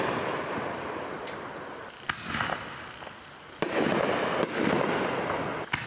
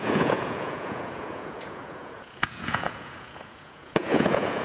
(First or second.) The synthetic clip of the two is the second